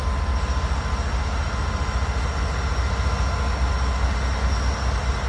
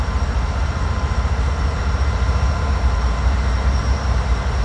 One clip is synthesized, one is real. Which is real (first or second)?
first